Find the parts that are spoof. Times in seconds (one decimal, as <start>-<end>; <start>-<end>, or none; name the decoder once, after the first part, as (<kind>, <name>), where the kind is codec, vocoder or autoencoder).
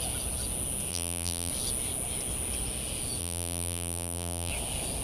0.9-1.5 (vocoder, BigVGAN v2); 3.2-4.5